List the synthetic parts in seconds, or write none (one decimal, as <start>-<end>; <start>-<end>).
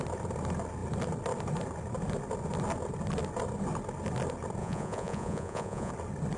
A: 4.6-5.9